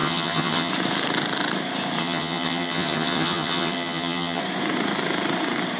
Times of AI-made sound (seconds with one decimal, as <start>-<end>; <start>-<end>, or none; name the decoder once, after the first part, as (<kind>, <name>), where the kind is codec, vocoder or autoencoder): 0.0-0.7 (vocoder, HiFi-GAN); 2.0-4.4